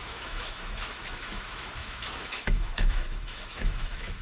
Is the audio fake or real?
fake